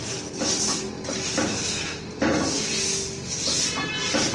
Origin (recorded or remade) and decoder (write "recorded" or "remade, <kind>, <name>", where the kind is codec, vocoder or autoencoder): recorded